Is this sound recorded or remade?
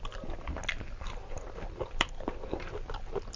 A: recorded